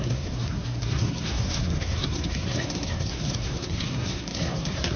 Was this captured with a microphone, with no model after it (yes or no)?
no